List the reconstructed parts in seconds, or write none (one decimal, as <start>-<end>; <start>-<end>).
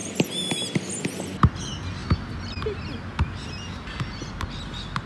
none